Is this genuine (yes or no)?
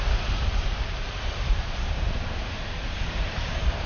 no